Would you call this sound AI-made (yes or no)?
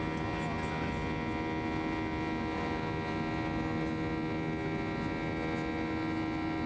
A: no